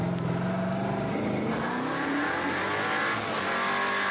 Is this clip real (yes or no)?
yes